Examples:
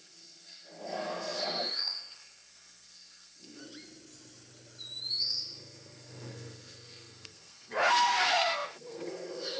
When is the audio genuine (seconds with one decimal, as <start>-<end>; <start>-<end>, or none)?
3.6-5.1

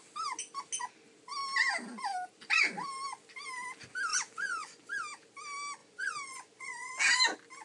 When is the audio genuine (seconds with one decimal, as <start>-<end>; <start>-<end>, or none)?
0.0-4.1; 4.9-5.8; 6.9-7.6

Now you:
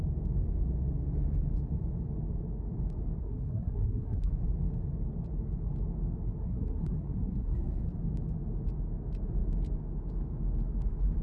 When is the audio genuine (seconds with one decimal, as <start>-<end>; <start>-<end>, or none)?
0.0-3.2; 4.3-6.4; 7.8-11.2

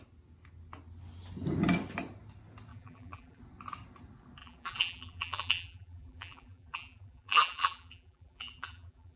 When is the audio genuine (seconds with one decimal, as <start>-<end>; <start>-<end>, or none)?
0.0-2.7; 3.4-4.4